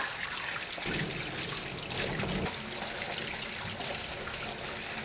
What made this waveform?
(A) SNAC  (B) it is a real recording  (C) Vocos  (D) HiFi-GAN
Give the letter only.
B